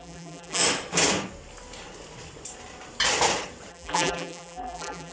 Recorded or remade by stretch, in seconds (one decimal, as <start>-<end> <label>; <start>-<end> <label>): 0.0-0.6 remade; 0.6-3.7 recorded; 3.7-5.1 remade